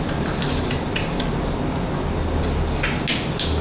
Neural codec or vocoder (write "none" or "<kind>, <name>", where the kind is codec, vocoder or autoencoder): none